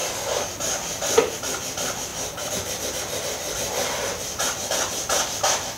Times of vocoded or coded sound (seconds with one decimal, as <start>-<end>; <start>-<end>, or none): 0.0-0.5